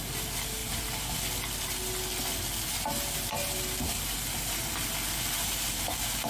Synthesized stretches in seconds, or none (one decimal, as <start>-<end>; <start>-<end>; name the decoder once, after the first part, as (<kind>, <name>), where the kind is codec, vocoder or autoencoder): none